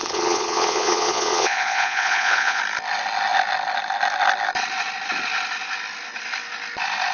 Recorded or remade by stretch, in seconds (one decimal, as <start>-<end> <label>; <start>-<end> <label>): 0.0-2.6 remade; 2.6-7.1 recorded